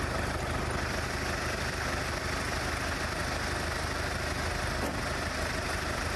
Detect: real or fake real